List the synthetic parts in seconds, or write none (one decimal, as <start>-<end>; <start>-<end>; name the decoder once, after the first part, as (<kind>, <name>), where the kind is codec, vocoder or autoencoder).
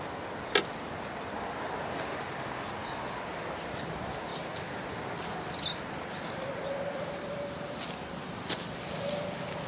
none